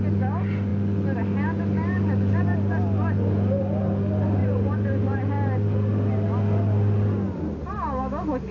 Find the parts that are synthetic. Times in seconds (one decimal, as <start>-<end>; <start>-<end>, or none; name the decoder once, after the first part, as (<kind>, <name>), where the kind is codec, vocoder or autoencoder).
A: 4.4-5.2 (vocoder, BigVGAN v2)